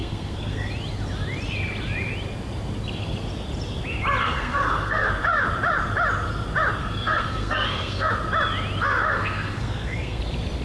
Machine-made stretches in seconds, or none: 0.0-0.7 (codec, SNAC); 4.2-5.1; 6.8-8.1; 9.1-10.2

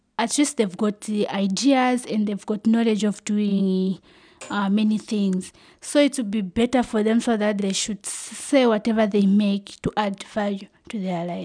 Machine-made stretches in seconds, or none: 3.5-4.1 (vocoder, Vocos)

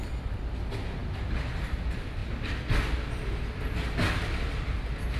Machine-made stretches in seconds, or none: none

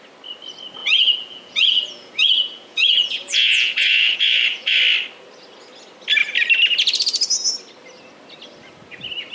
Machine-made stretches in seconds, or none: 0.8-4.8 (vocoder, Vocos)